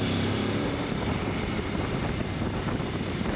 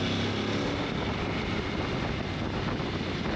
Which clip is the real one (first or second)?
second